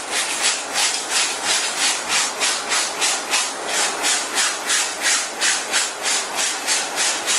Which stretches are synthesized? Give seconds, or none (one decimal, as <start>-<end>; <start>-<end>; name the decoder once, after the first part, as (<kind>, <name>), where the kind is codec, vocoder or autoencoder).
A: 0.8-2.3 (vocoder, BigVGAN v2)